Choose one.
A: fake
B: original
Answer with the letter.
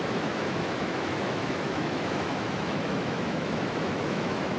A